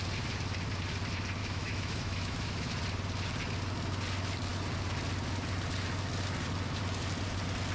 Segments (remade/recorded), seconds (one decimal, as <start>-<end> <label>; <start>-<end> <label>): 0.0-1.4 recorded; 1.4-2.8 remade; 2.8-7.7 recorded